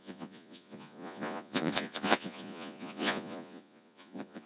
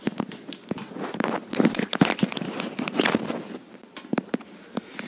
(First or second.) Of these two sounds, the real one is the second